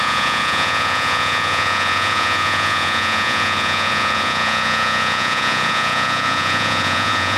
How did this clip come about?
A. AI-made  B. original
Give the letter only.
A